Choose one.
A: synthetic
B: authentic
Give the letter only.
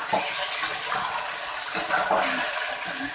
B